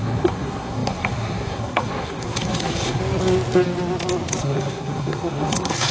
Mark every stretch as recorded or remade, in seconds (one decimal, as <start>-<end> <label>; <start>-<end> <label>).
0.0-3.0 remade; 3.0-4.4 recorded; 4.4-5.9 remade